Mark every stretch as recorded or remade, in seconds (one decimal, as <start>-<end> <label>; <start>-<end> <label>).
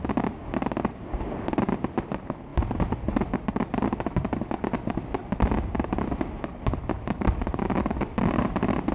0.0-8.9 recorded